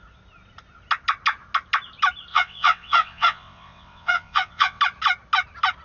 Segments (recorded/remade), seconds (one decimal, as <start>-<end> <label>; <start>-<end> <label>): 0.0-2.3 recorded; 2.3-4.8 remade; 4.8-5.8 recorded